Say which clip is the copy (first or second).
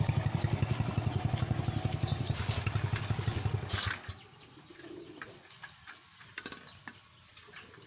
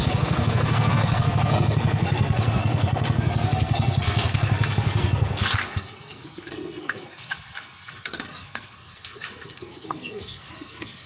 second